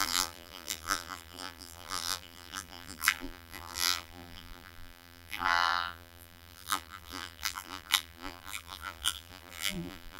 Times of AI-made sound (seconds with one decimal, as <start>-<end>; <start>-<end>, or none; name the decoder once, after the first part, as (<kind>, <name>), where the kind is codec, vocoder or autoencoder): 0.0-10.2 (vocoder, BigVGAN v2)